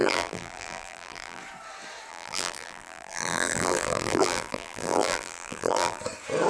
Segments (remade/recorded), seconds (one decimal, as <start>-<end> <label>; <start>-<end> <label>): 0.0-1.4 remade; 1.4-2.1 recorded; 2.1-6.0 remade; 6.0-6.5 recorded